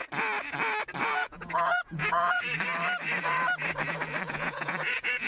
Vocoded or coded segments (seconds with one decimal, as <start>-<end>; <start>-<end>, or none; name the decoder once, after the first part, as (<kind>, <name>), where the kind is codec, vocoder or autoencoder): 1.0-2.5 (vocoder, Vocos); 4.3-5.3